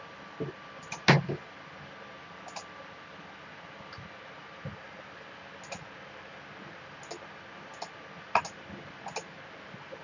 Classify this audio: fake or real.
real